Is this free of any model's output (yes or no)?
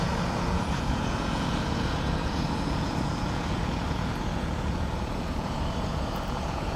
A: no